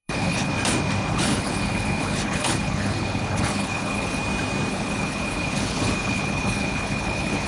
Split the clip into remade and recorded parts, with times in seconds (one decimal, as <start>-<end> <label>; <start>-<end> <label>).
0.0-0.5 remade; 0.5-1.1 recorded; 1.1-4.2 remade; 4.2-4.7 recorded; 4.7-7.5 remade